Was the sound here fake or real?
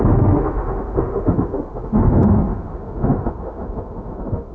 fake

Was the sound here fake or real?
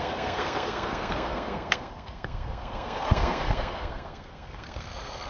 fake